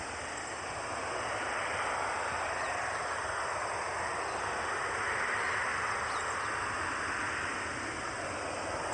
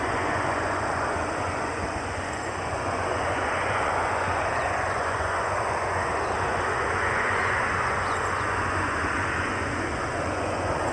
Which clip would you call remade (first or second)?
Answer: second